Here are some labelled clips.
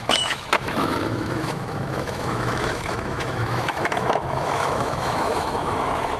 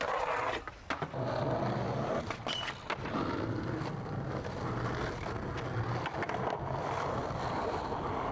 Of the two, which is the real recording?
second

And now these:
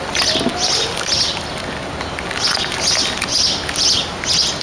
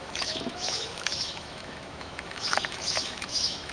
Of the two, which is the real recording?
first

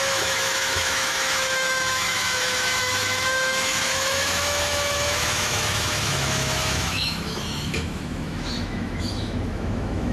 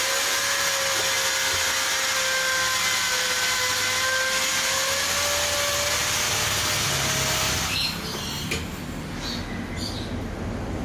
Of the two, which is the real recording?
second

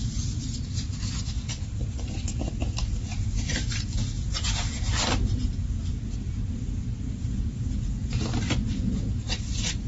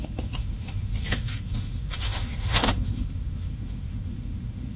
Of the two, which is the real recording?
first